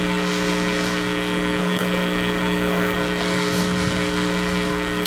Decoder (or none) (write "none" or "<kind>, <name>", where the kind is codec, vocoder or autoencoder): codec, SNAC